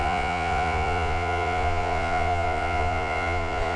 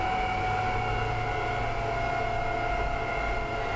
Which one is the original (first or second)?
second